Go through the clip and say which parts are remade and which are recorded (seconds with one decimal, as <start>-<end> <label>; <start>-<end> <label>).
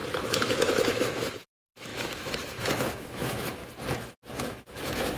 0.0-3.6 remade; 3.6-4.3 recorded; 4.3-5.2 remade